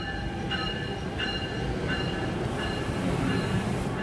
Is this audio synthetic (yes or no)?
no